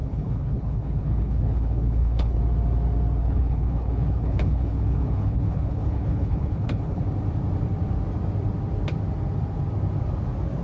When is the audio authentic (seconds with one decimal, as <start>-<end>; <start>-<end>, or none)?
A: 2.4-3.2; 7.0-10.6